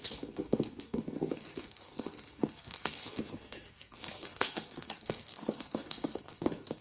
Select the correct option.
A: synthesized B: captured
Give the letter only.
A